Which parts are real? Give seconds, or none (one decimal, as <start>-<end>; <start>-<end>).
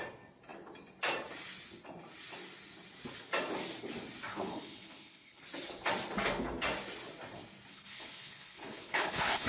0.0-4.3; 5.4-7.7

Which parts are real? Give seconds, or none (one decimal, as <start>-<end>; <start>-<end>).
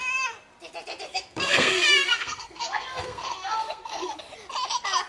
0.0-1.1; 4.2-5.1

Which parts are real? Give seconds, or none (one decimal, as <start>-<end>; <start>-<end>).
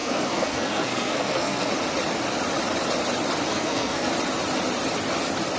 1.7-3.5; 4.1-5.6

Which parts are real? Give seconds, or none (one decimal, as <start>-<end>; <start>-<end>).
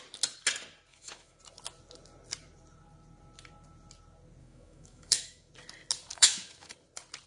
0.0-0.9; 1.4-4.4; 5.5-6.1; 6.7-7.3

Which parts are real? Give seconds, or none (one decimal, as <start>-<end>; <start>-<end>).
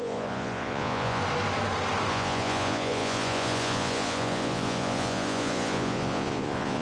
1.2-2.1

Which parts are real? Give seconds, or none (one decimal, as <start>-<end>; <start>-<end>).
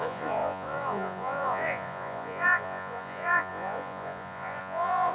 none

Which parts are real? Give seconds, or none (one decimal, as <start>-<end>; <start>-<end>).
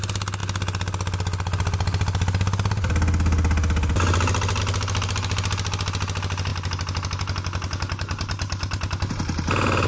0.0-9.9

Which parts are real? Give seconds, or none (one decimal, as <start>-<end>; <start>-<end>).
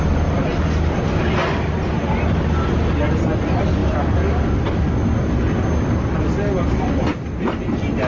0.0-8.1